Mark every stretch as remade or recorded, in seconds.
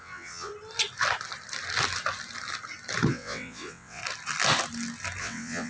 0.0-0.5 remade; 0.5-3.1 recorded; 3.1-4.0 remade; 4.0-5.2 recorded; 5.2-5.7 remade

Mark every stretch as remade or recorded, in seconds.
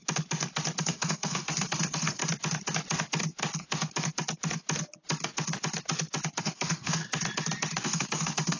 0.0-0.8 recorded; 0.8-2.2 remade; 2.2-6.4 recorded; 6.4-7.0 remade; 7.0-7.8 recorded; 7.8-8.6 remade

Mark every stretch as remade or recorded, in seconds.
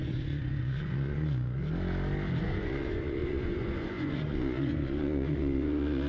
0.0-1.6 remade; 1.6-2.4 recorded; 2.4-6.1 remade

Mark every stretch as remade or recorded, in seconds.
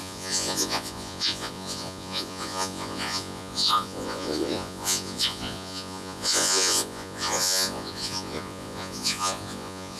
0.0-10.0 remade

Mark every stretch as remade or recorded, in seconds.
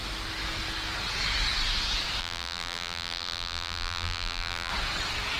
0.0-2.2 recorded; 2.2-4.7 remade; 4.7-5.4 recorded